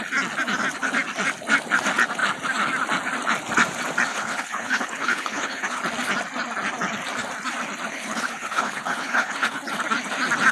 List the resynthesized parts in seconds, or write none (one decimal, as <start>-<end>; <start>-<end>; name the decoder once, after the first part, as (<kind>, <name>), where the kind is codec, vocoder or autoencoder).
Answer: 4.1-5.8 (codec, HILCodec); 7.9-9.6